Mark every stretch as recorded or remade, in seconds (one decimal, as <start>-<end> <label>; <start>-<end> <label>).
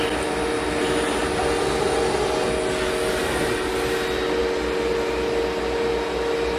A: 0.0-6.6 recorded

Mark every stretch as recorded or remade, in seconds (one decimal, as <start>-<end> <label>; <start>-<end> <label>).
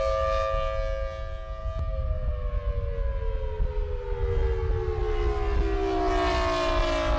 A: 0.0-7.2 recorded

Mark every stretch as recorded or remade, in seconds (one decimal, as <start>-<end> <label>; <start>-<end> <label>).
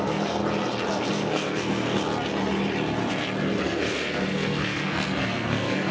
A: 0.0-0.4 remade; 0.4-1.1 recorded; 1.1-2.0 remade; 2.0-3.6 recorded; 3.6-5.9 remade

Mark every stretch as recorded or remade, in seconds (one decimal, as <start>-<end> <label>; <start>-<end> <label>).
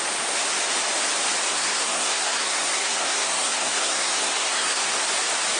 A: 0.0-1.5 recorded; 1.5-4.9 remade; 4.9-5.6 recorded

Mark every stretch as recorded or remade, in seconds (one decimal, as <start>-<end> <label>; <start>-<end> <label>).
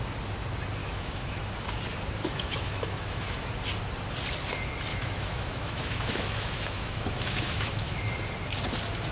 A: 0.0-0.8 recorded; 0.8-1.4 remade; 1.4-2.2 recorded; 2.2-3.5 remade; 3.5-4.9 recorded; 4.9-8.0 remade; 8.0-9.1 recorded